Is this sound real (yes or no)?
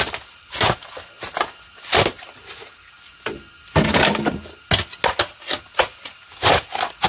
yes